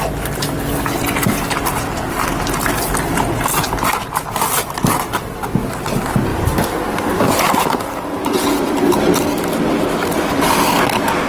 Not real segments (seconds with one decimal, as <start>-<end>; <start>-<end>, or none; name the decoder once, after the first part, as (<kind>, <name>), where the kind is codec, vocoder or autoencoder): none